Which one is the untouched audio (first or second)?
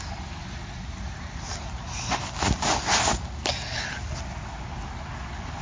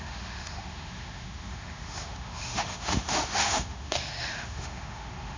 first